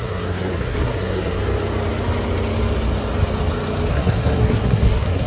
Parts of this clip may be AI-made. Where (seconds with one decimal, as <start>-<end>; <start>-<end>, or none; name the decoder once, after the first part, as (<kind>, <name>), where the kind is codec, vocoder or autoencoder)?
0.0-1.4 (codec, SNAC); 3.9-5.3